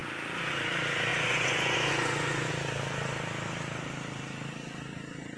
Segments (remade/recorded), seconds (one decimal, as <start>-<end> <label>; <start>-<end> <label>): 0.0-1.1 recorded; 1.1-2.5 remade; 2.5-5.4 recorded